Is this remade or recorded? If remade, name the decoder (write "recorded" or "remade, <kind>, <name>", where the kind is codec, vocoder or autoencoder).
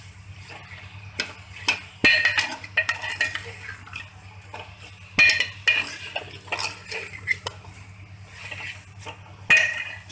recorded